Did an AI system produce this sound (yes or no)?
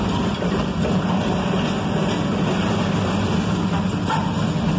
no